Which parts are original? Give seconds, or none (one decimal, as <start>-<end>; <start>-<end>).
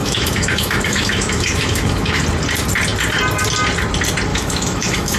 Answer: 2.2-4.3